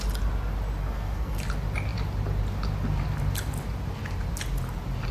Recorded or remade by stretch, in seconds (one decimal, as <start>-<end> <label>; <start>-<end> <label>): 0.0-0.8 recorded; 0.8-1.4 remade; 1.4-5.1 recorded